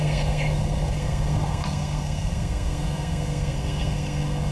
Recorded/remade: remade